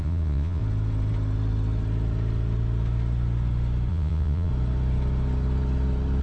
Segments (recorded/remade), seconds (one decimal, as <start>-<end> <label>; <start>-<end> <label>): 0.0-0.6 remade; 0.6-3.9 recorded; 3.9-4.5 remade; 4.5-6.2 recorded